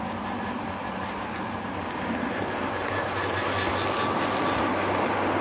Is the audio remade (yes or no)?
no